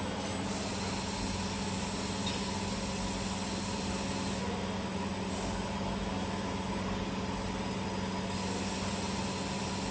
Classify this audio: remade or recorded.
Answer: recorded